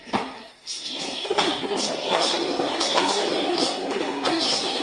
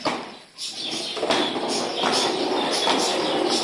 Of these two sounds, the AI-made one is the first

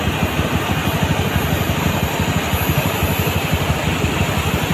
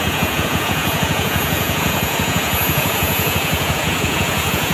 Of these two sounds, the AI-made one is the second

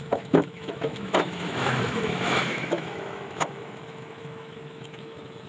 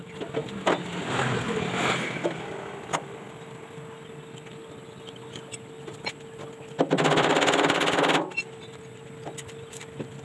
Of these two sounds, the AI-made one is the first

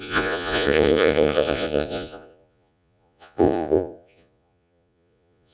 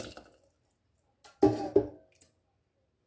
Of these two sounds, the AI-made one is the first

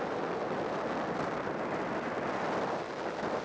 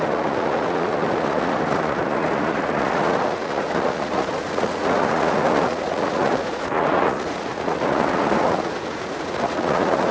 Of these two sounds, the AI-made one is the second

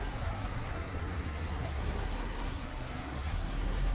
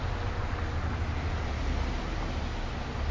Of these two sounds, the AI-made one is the first